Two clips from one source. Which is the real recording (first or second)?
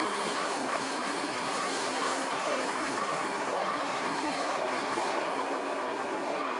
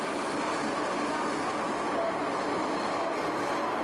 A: second